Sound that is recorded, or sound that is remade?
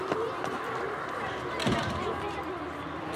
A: recorded